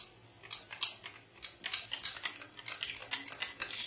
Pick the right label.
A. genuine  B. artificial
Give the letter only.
A